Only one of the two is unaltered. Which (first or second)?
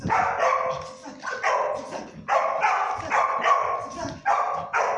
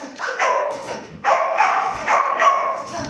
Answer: first